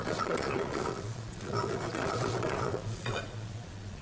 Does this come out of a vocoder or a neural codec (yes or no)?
yes